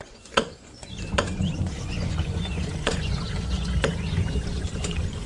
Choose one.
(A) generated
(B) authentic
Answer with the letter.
A